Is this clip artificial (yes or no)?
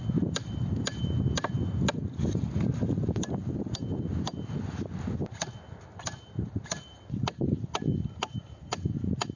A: no